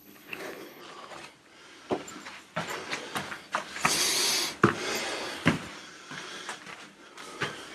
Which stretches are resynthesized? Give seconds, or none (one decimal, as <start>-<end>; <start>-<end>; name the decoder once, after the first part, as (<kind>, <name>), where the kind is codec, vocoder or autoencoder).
0.0-0.8 (codec, HILCodec)